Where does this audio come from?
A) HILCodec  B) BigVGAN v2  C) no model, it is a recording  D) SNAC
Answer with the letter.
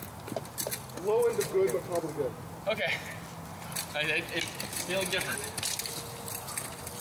C